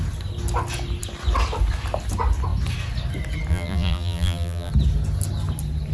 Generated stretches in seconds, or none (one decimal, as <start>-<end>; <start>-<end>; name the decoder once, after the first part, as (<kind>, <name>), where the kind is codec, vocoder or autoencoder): 3.5-4.7 (vocoder, BigVGAN v2)